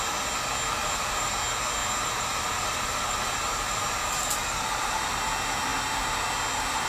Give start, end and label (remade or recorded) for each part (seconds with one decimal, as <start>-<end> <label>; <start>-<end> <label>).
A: 0.0-0.8 recorded; 0.8-1.3 remade; 1.3-1.8 recorded; 1.8-5.2 remade; 5.2-6.9 recorded